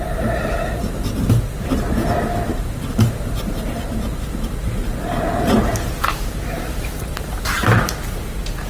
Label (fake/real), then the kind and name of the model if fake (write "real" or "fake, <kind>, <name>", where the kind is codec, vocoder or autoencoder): real